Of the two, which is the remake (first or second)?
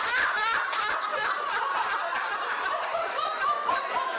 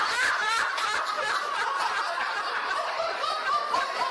second